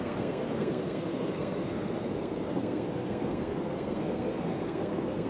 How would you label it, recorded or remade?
remade